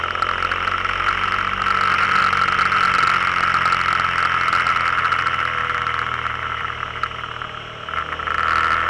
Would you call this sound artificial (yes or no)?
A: no